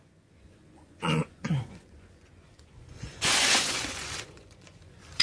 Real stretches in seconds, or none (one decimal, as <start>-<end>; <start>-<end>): none